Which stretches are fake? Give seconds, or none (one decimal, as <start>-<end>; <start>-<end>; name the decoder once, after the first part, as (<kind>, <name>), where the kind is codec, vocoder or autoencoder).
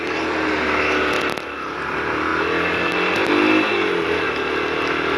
none